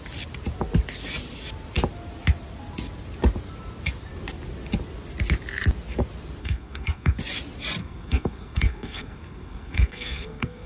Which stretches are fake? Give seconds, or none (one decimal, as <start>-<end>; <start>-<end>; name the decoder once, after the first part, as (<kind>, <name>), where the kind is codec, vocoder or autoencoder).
6.4-7.2 (codec, SNAC); 7.8-10.7